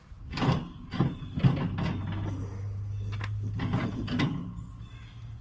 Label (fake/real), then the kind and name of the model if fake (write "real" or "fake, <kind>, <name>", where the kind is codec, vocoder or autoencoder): real